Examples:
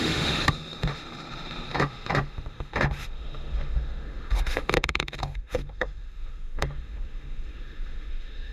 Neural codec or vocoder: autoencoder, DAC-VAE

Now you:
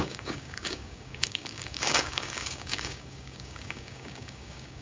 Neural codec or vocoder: codec, DAC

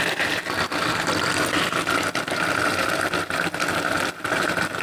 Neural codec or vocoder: none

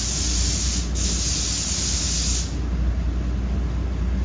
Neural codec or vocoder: none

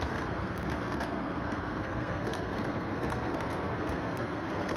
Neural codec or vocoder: codec, SNAC